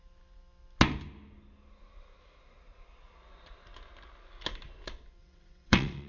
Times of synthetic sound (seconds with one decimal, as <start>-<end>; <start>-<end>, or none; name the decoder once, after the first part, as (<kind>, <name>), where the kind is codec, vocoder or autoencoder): 5.2-6.1 (vocoder, WaveNeXt)